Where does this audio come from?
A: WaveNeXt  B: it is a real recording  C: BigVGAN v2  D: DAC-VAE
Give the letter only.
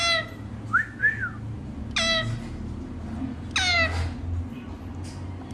B